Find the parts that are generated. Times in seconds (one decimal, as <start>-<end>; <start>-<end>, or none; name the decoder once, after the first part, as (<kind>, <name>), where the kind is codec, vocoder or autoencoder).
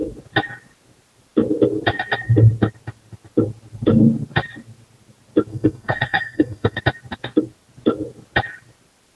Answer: 5.5-6.8 (codec, SNAC)